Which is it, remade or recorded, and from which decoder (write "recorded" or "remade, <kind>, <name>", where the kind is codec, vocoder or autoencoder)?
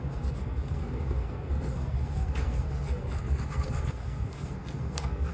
remade, codec, SNAC